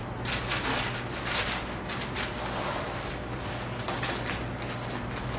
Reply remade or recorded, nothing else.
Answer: recorded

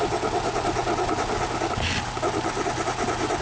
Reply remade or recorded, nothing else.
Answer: recorded